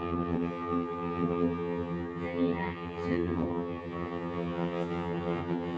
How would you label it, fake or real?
fake